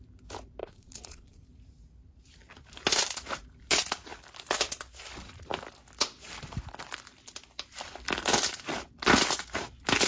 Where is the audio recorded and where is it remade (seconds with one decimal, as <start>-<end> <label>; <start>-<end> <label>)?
0.0-0.6 recorded; 0.6-1.4 remade; 1.4-10.1 recorded